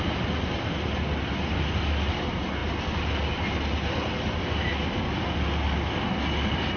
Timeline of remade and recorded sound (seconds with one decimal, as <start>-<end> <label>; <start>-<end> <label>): 0.0-6.8 recorded